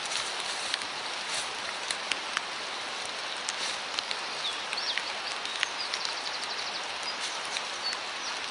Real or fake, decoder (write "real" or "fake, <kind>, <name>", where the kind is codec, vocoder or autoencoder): real